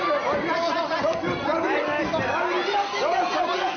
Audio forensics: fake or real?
real